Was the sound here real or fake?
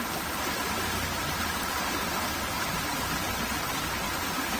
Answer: real